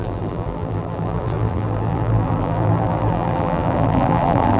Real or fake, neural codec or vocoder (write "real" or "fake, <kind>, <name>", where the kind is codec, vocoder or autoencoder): fake, vocoder, BigVGAN v2